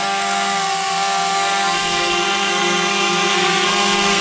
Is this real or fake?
fake